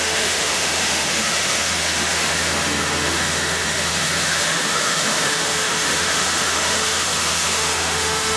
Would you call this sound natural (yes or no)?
no